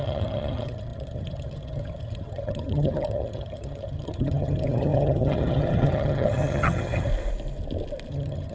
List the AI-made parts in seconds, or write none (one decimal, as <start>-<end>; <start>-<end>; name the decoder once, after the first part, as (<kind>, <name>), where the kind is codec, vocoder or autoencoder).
0.0-7.1 (vocoder, HiFi-GAN); 8.1-8.5